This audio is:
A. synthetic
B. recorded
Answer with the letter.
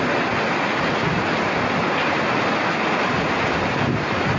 B